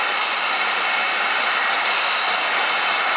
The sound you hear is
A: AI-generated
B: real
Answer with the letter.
B